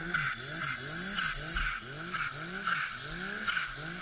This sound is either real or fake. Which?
real